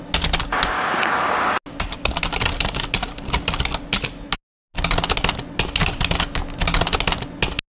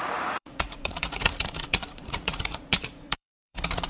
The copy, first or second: second